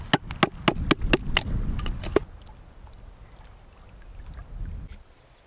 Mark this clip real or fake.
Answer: real